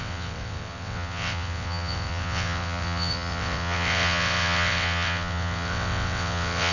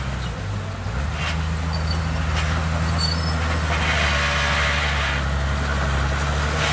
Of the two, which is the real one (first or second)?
second